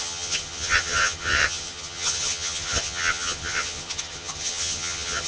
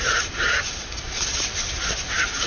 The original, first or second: second